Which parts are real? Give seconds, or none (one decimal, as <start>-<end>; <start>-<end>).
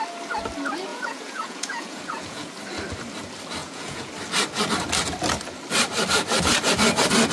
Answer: 0.0-0.9; 2.5-3.6; 4.1-7.3